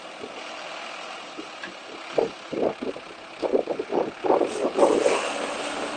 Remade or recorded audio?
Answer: recorded